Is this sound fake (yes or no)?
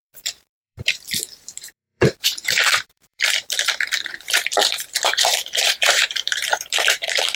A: yes